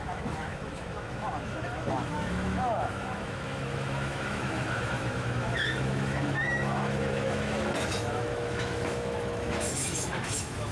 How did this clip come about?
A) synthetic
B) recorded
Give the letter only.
A